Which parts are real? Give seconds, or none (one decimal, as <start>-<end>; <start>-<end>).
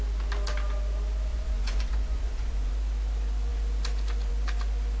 0.0-1.3; 2.7-5.0